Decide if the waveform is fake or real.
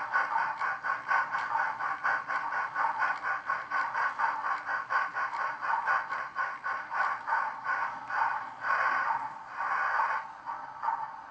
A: real